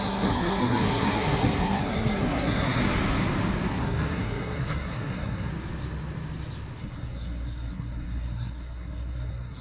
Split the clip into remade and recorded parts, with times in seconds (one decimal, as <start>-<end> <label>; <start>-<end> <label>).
0.0-2.8 remade; 2.8-3.7 recorded; 3.7-5.5 remade; 5.5-6.8 recorded; 6.8-9.6 remade